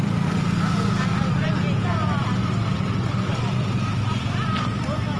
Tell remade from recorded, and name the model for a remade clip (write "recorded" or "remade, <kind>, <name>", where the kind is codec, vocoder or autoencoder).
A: recorded